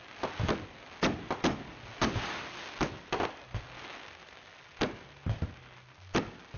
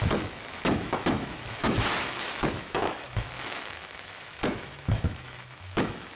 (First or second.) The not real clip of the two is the second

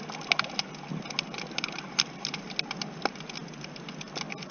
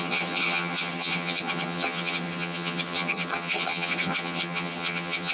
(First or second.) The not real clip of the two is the second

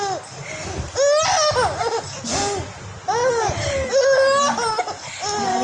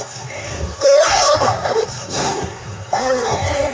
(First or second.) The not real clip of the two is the second